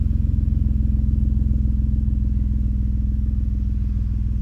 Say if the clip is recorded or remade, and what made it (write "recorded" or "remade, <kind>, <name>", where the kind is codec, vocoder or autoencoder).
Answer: recorded